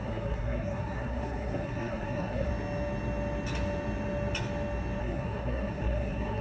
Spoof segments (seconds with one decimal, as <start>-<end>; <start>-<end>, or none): 0.0-2.5; 5.0-6.4